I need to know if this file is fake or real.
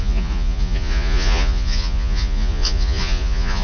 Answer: fake